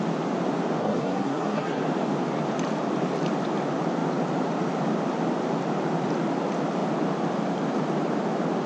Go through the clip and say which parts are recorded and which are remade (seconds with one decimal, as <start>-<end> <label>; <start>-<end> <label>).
0.0-0.8 recorded; 0.8-1.8 remade; 1.8-8.7 recorded